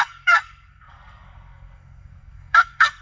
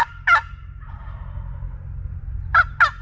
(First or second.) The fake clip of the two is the first